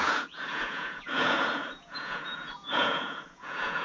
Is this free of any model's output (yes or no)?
no